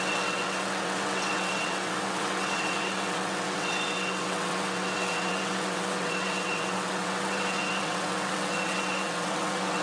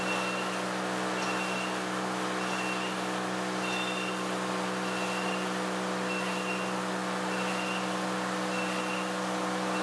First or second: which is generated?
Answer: first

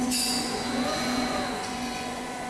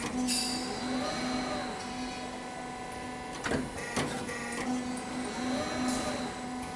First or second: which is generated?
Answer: first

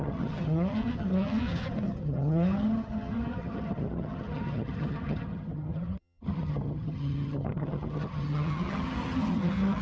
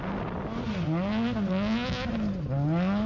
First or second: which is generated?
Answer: first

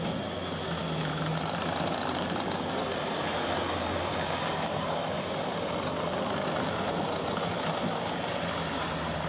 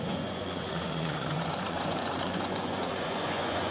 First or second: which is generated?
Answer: second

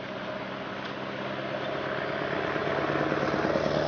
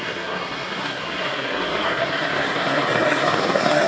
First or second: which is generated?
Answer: second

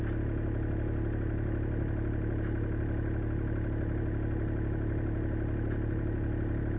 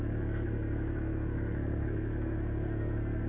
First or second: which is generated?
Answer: second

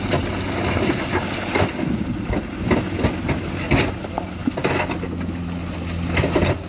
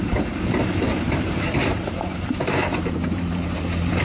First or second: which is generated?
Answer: second